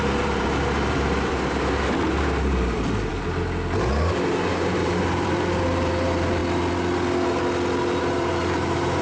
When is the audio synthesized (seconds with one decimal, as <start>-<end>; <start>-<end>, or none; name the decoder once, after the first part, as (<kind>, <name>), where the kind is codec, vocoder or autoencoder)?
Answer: 0.0-3.1 (vocoder, BigVGAN v2); 4.3-6.4; 8.0-9.0